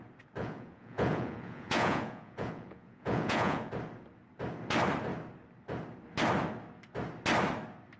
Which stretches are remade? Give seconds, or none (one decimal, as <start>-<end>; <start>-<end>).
0.4-3.7